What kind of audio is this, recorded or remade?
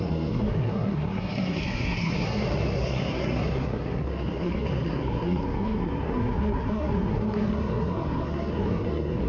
remade